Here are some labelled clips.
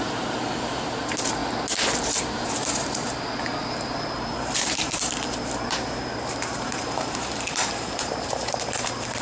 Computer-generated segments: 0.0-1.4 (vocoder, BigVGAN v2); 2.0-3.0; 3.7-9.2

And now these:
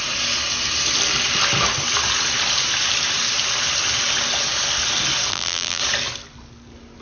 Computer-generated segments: 5.3-5.8 (vocoder, BigVGAN v2)

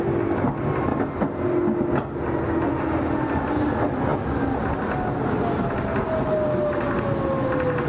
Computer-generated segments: none

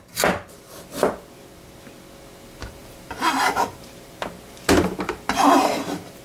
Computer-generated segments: 2.8-6.2 (vocoder, BigVGAN v2)

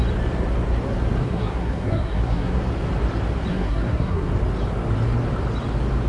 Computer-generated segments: 1.2-2.6 (codec, SNAC); 3.5-4.3